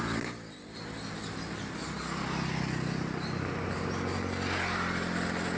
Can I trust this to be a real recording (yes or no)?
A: yes